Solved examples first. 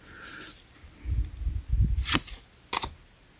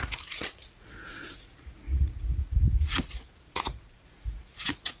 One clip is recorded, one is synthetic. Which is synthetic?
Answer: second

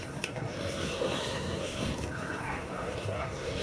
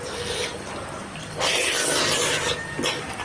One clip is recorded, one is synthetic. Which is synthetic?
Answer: first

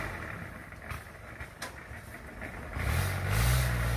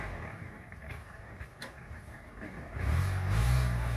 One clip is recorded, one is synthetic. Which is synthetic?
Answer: second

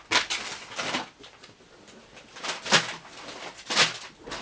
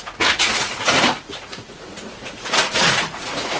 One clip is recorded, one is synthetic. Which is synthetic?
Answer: second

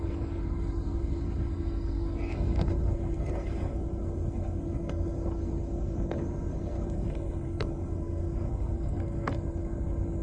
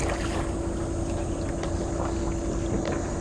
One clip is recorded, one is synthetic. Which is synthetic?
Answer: first